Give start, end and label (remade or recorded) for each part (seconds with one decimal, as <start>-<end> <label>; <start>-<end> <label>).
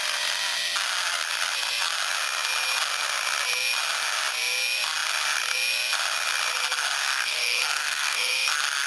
0.0-7.0 recorded; 7.0-8.5 remade; 8.5-8.9 recorded